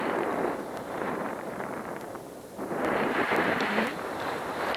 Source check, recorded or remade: remade